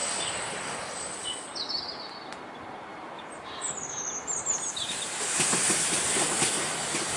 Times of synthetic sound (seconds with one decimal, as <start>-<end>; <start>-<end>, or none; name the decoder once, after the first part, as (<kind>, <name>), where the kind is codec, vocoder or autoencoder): 2.9-6.6 (vocoder, BigVGAN v2)